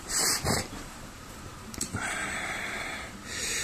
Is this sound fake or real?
fake